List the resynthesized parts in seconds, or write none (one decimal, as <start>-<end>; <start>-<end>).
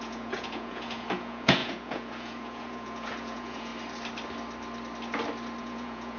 0.0-3.7; 5.6-6.2